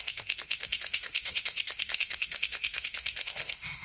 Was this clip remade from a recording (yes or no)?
yes